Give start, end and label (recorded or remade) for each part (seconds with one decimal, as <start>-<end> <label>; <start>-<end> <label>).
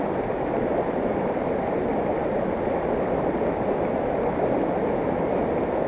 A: 0.0-5.9 recorded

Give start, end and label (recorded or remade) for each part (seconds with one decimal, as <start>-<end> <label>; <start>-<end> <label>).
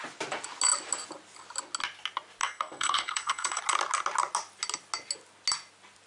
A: 0.0-2.4 recorded; 2.4-3.6 remade; 3.6-6.1 recorded